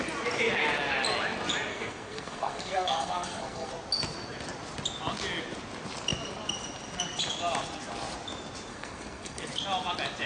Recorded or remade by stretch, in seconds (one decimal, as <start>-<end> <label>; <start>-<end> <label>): 0.0-1.7 recorded; 1.7-3.7 remade; 3.7-8.7 recorded; 8.7-9.5 remade; 9.5-10.3 recorded